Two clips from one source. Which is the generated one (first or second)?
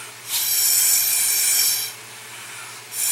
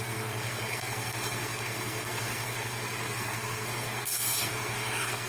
second